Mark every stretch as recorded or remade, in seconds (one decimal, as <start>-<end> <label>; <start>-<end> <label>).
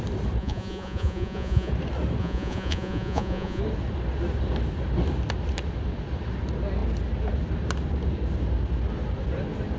0.0-0.4 recorded; 0.4-1.7 remade; 1.7-2.2 recorded; 2.2-3.6 remade; 3.6-9.8 recorded